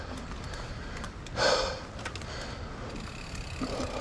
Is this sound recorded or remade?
recorded